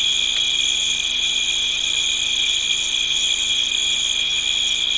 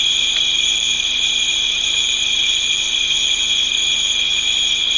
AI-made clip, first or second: second